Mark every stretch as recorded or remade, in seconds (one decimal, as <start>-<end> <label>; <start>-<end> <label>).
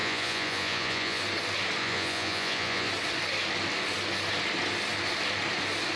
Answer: 0.0-1.2 remade; 1.2-1.8 recorded; 1.8-2.9 remade; 2.9-6.0 recorded